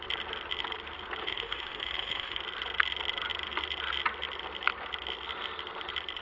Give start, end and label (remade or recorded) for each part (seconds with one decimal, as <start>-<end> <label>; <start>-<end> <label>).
0.0-1.2 recorded; 1.2-2.4 remade; 2.4-6.2 recorded